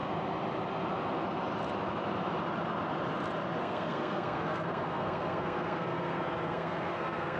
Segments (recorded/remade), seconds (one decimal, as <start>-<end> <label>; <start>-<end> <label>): 0.0-3.6 recorded; 3.6-7.4 remade